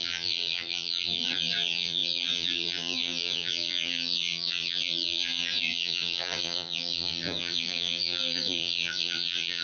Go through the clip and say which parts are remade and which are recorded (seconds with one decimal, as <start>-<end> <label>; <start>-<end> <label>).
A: 0.0-9.6 remade